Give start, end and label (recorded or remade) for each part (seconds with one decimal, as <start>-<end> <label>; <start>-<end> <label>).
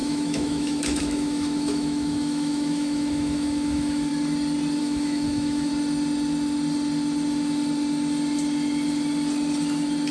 0.0-4.1 remade; 4.1-4.8 recorded; 4.8-5.7 remade; 5.7-10.1 recorded